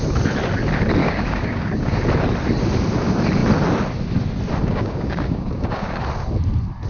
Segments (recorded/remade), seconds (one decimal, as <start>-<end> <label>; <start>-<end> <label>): 0.0-1.0 recorded; 1.0-2.0 remade; 2.0-4.7 recorded; 4.7-6.0 remade; 6.0-6.9 recorded